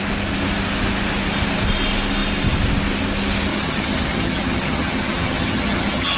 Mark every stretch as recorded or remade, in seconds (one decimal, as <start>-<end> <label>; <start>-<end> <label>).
0.0-3.5 recorded; 3.5-6.2 remade